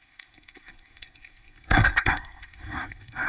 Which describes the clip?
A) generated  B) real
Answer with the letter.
A